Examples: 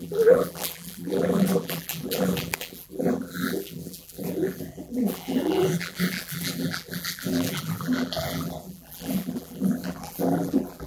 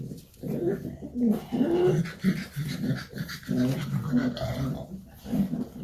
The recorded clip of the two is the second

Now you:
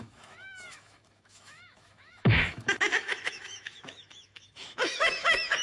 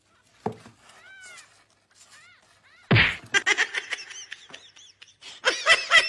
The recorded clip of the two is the second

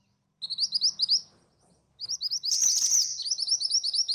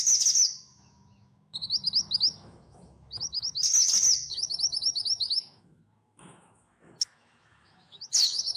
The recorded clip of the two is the first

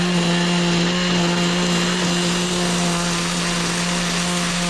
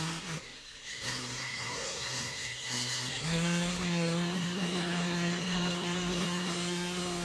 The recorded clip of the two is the first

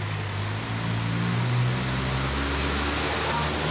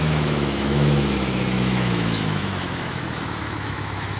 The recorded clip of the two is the first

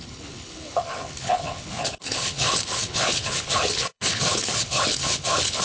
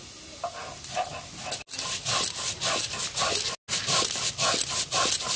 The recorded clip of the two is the second